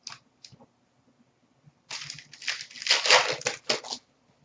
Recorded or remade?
recorded